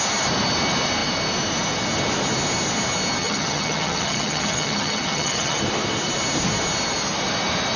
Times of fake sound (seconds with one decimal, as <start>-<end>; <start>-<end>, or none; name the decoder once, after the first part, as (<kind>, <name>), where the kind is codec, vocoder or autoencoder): 3.2-5.6 (vocoder, HiFi-GAN)